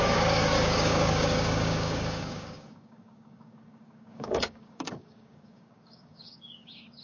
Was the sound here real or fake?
fake